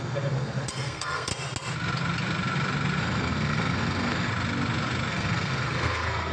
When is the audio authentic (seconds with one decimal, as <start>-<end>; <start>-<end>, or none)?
1.3-3.0; 4.3-5.1

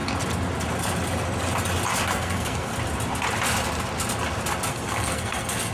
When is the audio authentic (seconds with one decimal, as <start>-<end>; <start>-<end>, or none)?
0.0-2.1; 2.7-4.7

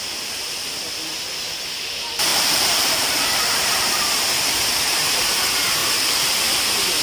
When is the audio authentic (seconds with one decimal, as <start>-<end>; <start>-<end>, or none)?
0.0-2.3; 4.2-5.8; 6.4-7.0

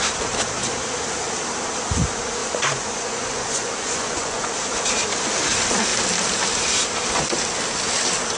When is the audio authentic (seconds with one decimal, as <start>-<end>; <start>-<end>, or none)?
0.0-2.4; 4.5-8.4

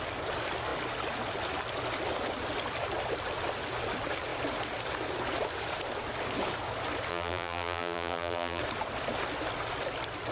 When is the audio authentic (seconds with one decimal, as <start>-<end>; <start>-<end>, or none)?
0.0-7.1; 8.6-10.3

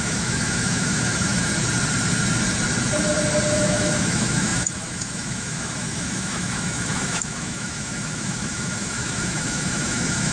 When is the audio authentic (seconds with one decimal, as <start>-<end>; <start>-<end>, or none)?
1.5-3.5

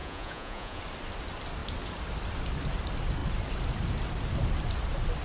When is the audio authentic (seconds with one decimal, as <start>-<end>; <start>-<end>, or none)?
0.8-5.2